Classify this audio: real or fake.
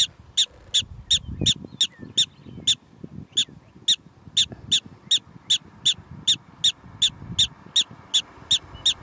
real